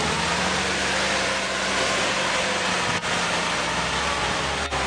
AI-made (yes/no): no